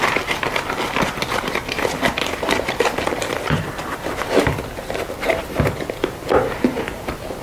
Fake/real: real